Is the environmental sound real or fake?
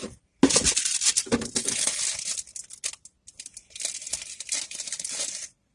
real